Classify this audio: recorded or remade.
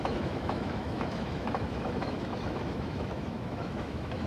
remade